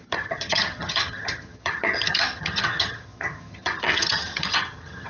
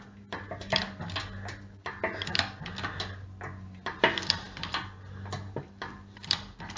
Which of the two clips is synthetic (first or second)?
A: first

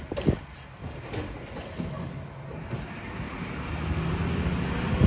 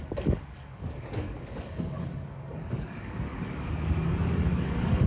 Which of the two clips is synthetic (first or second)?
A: second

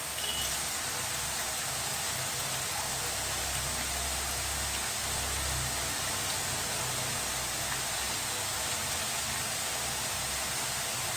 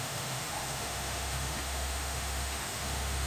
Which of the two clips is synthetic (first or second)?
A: second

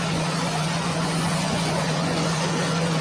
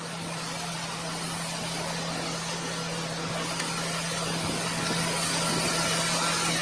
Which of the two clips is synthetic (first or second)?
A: first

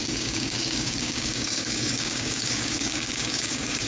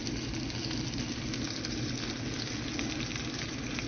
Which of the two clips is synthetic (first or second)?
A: first